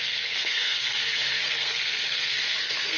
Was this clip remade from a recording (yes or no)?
yes